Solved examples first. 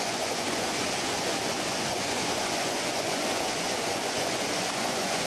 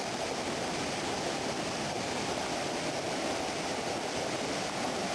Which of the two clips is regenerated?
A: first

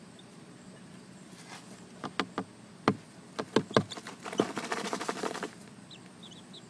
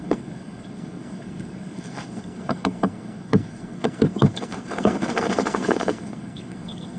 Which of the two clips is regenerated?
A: second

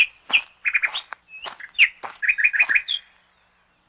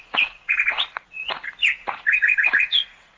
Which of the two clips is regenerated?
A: second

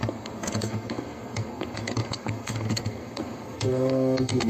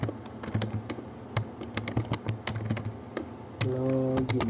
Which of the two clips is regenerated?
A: first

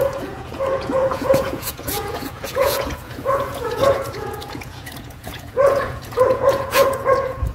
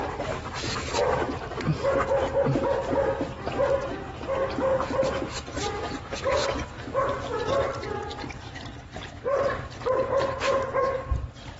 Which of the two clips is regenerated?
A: first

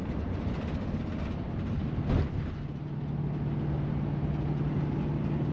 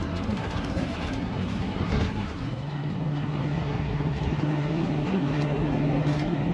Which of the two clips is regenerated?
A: second